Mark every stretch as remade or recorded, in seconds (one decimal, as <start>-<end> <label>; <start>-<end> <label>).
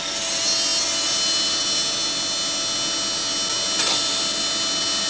0.0-5.1 recorded